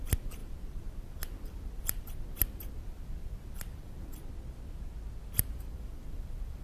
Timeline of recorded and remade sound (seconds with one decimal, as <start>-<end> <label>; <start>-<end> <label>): 0.0-4.1 remade; 4.1-5.4 recorded; 5.4-6.6 remade